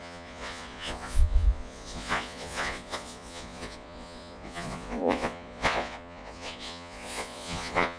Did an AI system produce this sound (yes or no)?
yes